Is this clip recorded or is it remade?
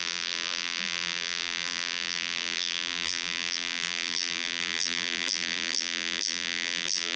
remade